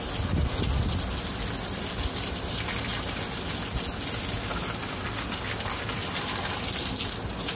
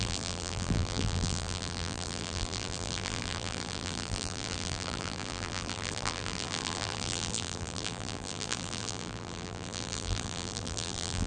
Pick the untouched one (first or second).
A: first